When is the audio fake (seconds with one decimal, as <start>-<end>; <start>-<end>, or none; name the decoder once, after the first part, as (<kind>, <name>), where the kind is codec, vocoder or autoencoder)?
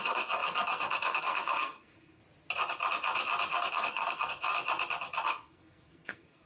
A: 0.0-2.2 (codec, SNAC); 3.7-4.5; 5.3-6.5